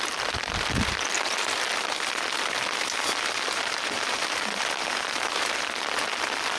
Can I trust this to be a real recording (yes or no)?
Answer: yes